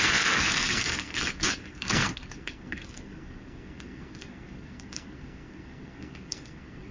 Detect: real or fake fake